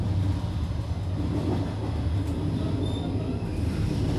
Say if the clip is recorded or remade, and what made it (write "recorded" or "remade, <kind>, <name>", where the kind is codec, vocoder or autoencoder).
recorded